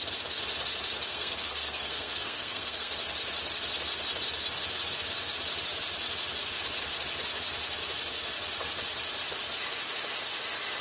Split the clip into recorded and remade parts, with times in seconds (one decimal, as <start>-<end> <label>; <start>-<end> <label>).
0.0-1.1 recorded; 1.1-2.9 remade; 2.9-10.8 recorded